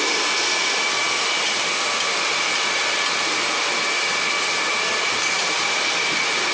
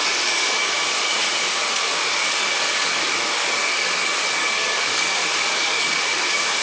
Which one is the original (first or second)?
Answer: first